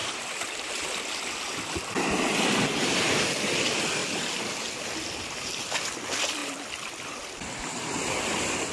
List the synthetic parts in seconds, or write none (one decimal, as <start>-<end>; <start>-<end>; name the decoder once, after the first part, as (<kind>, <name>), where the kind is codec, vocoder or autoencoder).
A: 0.0-1.6 (vocoder, BigVGAN v2); 4.0-4.7; 6.4-7.2

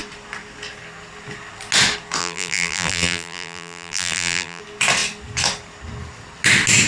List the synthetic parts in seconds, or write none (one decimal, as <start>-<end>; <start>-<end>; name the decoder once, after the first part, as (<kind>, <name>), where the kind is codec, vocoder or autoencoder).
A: 2.2-4.6 (vocoder, BigVGAN v2)

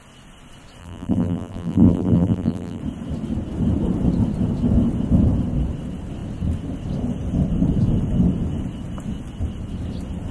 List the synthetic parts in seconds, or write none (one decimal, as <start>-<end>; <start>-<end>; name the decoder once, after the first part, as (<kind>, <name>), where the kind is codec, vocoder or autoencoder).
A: 0.8-2.8 (vocoder, BigVGAN v2)

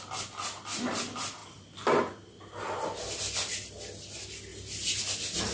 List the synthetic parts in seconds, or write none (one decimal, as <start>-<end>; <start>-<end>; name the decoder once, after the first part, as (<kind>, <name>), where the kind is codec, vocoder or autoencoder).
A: none

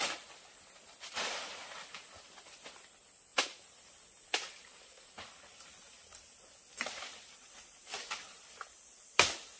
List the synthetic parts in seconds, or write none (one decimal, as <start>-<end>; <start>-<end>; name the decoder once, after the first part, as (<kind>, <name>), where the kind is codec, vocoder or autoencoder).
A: none

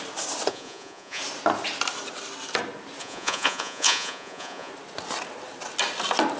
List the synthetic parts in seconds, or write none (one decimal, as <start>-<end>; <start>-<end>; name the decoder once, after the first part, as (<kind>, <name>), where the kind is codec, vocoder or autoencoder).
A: 0.5-1.2 (vocoder, Vocos); 3.0-4.7

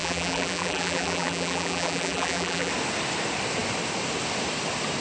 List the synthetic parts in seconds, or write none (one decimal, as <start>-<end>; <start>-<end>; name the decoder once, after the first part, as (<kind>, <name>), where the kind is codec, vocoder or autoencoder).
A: 0.0-2.7 (vocoder, BigVGAN v2)

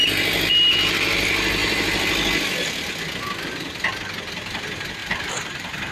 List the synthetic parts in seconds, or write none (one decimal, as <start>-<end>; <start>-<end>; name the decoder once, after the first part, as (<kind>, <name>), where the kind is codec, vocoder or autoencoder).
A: 5.0-5.9 (vocoder, BigVGAN v2)